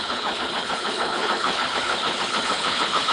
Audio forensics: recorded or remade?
remade